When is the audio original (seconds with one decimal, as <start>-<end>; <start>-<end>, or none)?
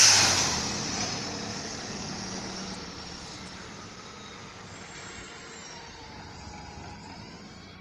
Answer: 0.0-1.5; 2.4-7.8